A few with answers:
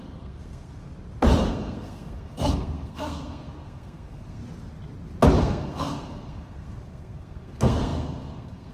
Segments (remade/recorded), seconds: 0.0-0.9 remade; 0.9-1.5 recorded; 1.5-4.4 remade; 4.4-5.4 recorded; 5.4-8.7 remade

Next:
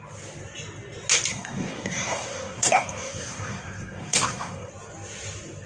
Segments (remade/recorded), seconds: 0.0-1.3 recorded; 1.3-4.7 remade; 4.7-5.7 recorded

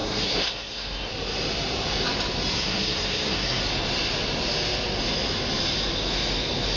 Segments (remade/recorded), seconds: 0.0-1.1 remade; 1.1-2.5 recorded; 2.5-3.6 remade; 3.6-6.8 recorded